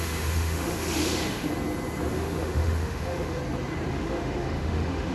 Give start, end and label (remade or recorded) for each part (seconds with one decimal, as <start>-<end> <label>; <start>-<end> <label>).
0.0-1.5 remade; 1.5-2.1 recorded; 2.1-3.4 remade; 3.4-3.9 recorded; 3.9-5.1 remade